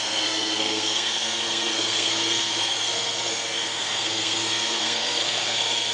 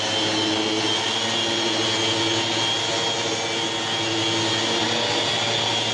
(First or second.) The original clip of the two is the second